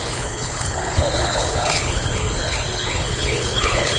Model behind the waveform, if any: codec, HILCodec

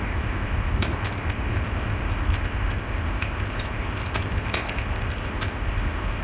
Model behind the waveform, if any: codec, ZipCodec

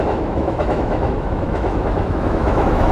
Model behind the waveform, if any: autoencoder, DAC-VAE